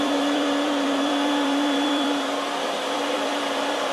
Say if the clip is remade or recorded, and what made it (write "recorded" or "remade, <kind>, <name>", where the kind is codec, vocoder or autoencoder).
remade, vocoder, BigVGAN v2